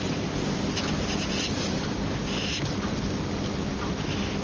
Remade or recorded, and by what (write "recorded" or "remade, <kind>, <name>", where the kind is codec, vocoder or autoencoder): recorded